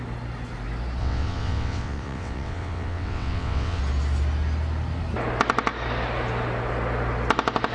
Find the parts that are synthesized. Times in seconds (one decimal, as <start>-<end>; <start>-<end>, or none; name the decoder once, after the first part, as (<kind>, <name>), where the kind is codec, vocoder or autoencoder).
1.0-3.8 (vocoder, WaveNeXt)